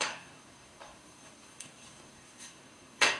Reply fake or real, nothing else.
fake